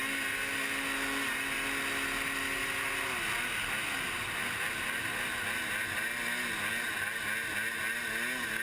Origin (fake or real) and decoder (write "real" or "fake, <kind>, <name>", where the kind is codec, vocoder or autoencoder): real